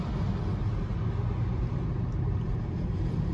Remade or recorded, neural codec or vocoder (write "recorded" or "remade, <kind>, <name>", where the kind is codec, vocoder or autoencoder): recorded